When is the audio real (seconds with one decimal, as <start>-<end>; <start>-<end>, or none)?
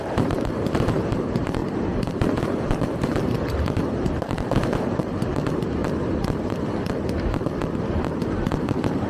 1.6-2.8; 5.8-6.9